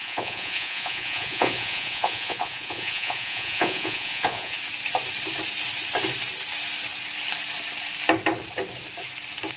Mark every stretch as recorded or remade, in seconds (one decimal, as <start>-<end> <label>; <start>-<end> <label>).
0.0-4.6 remade; 4.6-9.6 recorded